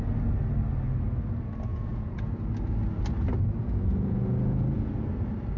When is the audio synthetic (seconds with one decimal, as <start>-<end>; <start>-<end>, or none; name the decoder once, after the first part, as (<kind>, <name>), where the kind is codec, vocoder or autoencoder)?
1.7-2.3 (vocoder, Vocos); 3.6-4.9